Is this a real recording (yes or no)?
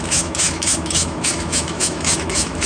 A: no